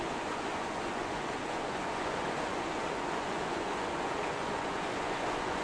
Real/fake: fake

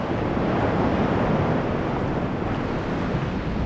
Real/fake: real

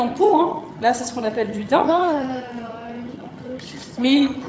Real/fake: fake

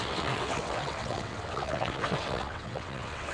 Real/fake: fake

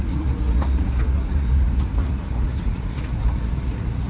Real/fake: fake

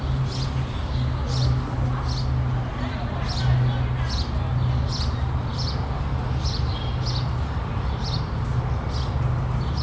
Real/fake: real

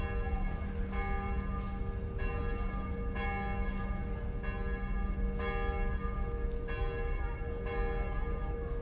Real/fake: real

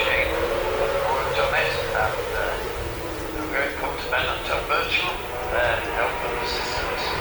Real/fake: real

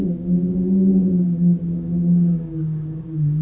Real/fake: fake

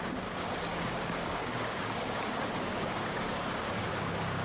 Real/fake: fake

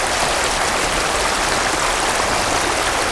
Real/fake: real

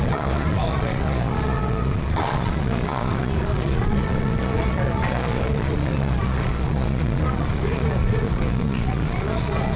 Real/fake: fake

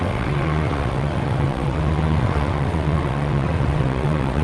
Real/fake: fake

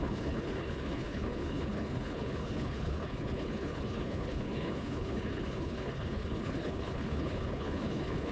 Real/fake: fake